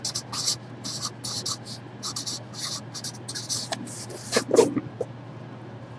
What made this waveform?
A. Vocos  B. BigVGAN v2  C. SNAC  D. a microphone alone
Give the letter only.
D